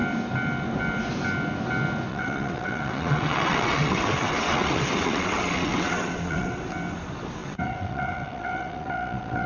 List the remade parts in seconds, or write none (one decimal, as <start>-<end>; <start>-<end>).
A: 2.1-6.6; 7.4-9.5